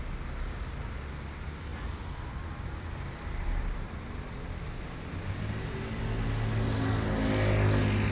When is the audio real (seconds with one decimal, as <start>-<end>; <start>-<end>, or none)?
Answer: 0.0-1.7; 5.5-8.1